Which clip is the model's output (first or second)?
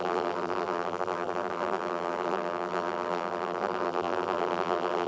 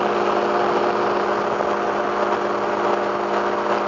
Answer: first